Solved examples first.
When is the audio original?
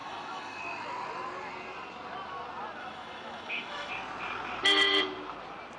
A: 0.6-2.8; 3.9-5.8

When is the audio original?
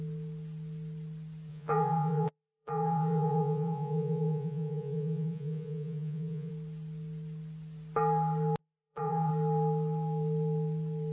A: 0.0-1.5; 6.5-8.6; 9.3-11.1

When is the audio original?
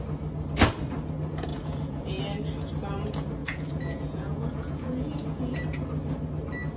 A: 0.0-1.5; 2.2-3.4; 5.6-6.8